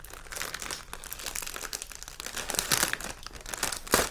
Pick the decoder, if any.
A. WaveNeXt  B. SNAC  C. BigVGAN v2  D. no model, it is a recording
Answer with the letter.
D